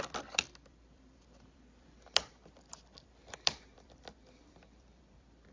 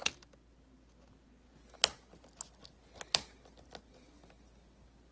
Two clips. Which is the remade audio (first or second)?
first